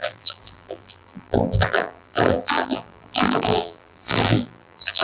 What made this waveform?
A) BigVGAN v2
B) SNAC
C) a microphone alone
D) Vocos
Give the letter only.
A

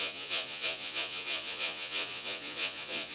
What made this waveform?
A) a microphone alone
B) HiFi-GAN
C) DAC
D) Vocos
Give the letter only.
D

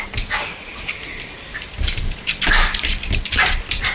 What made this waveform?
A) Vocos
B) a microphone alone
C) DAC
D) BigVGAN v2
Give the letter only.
D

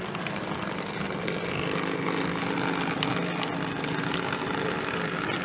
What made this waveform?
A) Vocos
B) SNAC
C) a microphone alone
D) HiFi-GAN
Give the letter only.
C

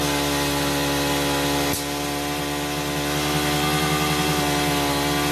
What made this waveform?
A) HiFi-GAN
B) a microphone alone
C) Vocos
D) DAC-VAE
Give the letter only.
B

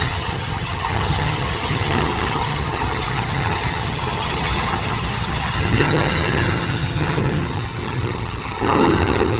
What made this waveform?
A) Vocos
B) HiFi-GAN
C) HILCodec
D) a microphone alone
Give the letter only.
B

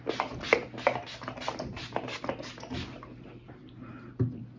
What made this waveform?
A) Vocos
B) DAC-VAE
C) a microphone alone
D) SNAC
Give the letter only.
C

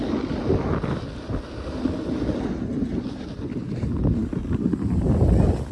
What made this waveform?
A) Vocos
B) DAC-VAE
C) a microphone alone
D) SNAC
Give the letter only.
C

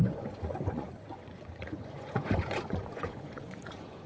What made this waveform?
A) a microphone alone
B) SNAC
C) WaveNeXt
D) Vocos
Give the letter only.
D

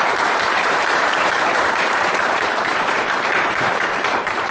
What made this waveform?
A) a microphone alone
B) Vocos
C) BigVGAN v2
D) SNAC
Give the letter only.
C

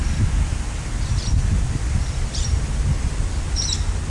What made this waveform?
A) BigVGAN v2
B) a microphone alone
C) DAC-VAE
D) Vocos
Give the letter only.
B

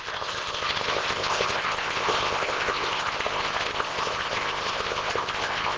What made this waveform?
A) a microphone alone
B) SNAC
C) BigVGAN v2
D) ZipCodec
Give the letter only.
D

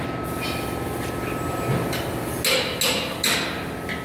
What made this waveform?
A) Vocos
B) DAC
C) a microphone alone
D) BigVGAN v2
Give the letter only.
C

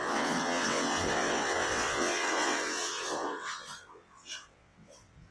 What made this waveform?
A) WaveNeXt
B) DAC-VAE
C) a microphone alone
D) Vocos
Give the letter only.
A